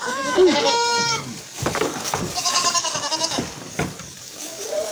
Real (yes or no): no